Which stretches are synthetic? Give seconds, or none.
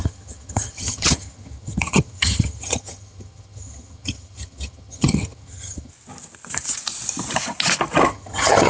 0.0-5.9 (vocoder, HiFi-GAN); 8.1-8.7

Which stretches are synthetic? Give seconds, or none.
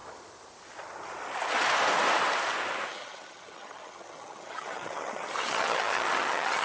2.9-6.6 (vocoder, HiFi-GAN)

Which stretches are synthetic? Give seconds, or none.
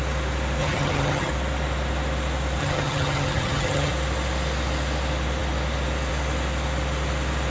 0.6-1.3 (vocoder, HiFi-GAN); 2.6-3.9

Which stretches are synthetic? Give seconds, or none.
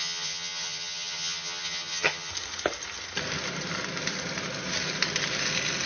0.0-2.3 (vocoder, HiFi-GAN)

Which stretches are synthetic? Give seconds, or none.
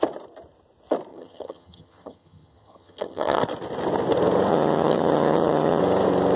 1.1-3.4 (vocoder, HiFi-GAN); 4.5-5.8